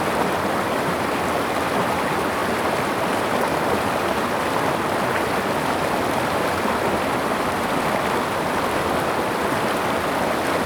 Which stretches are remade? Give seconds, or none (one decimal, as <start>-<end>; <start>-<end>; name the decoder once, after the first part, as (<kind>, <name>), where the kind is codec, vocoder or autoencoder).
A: none